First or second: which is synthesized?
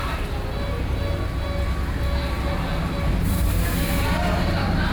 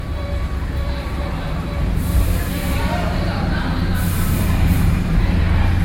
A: second